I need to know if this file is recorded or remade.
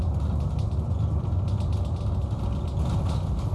recorded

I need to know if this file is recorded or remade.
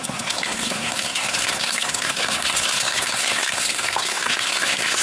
remade